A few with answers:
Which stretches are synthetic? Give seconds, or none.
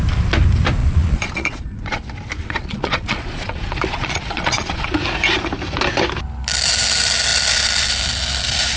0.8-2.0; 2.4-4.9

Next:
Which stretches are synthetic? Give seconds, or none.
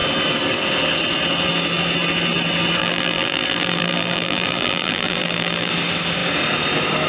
2.8-5.7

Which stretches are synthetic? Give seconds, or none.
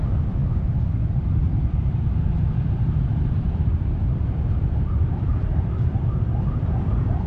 0.0-0.4; 1.9-7.3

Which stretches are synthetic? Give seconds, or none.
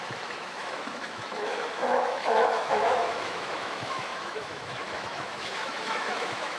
0.0-6.6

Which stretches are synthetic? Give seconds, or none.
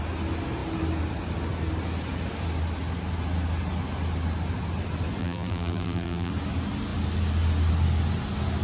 5.2-6.3